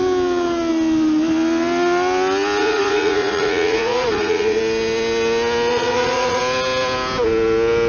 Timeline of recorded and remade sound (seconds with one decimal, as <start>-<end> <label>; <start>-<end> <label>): 0.0-2.6 recorded; 2.6-4.6 remade; 4.6-5.7 recorded; 5.7-6.4 remade; 6.4-7.9 recorded